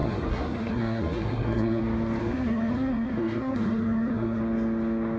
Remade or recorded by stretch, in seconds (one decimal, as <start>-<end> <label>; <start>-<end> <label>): 0.0-1.8 remade; 1.8-2.2 recorded; 2.2-4.4 remade; 4.4-5.2 recorded